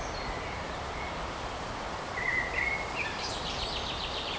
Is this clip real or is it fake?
fake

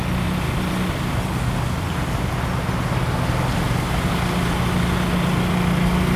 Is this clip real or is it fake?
real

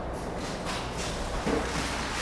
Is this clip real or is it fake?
real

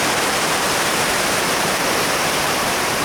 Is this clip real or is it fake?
fake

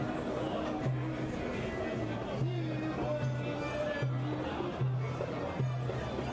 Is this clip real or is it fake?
real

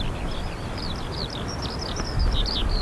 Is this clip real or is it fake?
fake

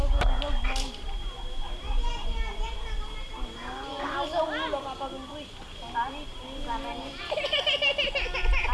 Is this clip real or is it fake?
real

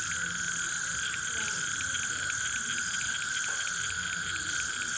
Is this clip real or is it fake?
real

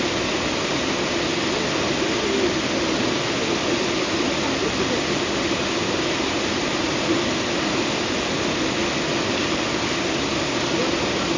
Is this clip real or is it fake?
real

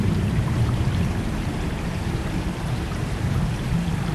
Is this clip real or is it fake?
fake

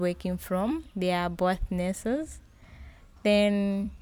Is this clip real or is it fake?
fake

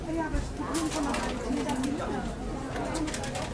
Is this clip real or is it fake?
real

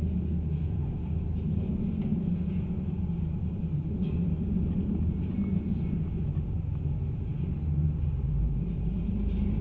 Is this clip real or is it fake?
real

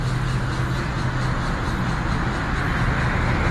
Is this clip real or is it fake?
real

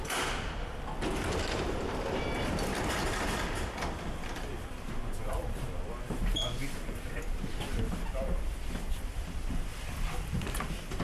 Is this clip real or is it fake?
fake